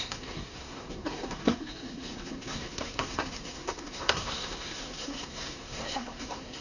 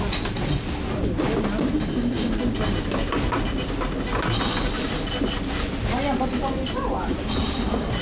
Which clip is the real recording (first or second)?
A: second